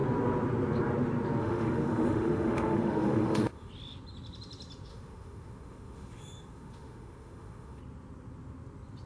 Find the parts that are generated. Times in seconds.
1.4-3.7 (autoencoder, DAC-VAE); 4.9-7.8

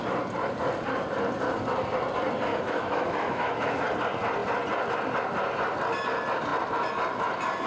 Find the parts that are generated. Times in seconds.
2.5-3.8 (autoencoder, DAC-VAE)

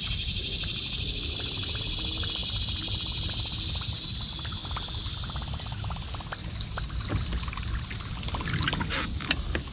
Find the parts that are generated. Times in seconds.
none

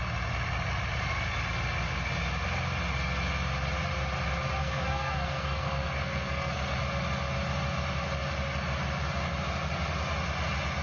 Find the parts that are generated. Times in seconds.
4.6-6.8 (codec, SNAC)

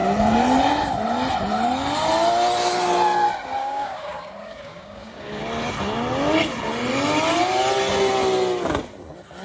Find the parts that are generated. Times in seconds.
3.6-5.4 (codec, DAC)

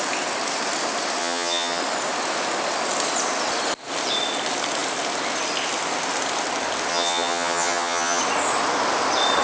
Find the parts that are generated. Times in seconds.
1.2-1.8 (vocoder, HiFi-GAN); 6.9-8.2